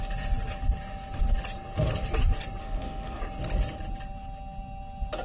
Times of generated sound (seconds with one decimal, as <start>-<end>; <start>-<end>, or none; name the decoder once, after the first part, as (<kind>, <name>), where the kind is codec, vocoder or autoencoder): 2.6-3.2 (codec, SNAC)